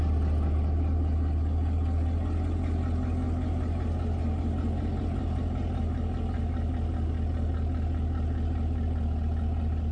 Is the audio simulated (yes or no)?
no